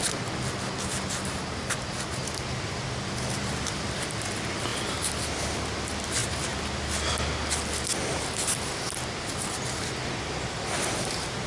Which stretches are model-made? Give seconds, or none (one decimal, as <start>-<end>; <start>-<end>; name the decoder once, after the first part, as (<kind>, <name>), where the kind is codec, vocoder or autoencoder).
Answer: none